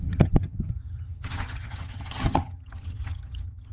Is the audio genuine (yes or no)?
no